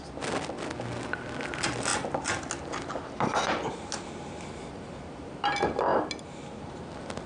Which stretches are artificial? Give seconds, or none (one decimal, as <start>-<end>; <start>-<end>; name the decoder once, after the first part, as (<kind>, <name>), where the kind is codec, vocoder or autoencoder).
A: none